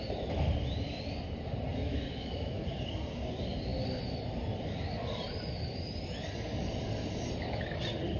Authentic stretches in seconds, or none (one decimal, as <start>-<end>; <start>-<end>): 0.0-1.7; 2.6-8.2